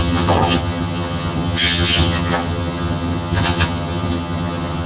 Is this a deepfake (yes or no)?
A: yes